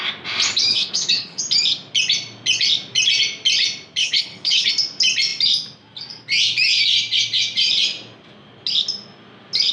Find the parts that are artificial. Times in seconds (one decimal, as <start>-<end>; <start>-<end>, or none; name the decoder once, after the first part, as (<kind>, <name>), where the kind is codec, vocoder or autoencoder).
0.7-1.4 (codec, HILCodec); 4.0-4.7